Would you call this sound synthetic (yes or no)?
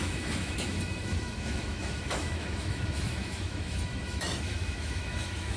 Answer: yes